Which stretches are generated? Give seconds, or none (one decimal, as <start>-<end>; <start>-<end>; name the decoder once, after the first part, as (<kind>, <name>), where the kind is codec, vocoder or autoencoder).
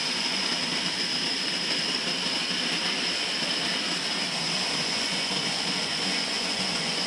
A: 0.0-0.5 (vocoder, Vocos); 4.8-7.1